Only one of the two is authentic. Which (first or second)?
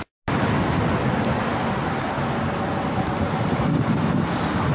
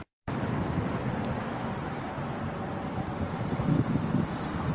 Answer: first